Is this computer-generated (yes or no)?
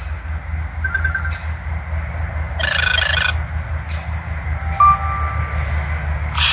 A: no